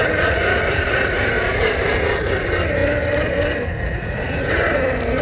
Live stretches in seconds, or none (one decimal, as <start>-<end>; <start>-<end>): 1.3-3.7; 4.6-5.2